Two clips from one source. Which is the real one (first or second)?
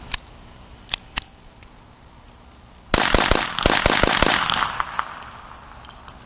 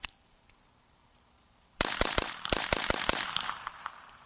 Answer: first